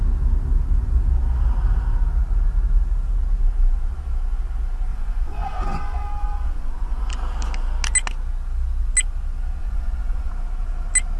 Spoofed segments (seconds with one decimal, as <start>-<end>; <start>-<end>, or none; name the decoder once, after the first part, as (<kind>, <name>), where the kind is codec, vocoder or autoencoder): 4.9-7.1 (vocoder, Vocos); 9.6-10.3